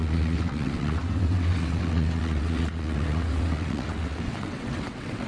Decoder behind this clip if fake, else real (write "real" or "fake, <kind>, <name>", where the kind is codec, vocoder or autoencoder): fake, vocoder, WaveNeXt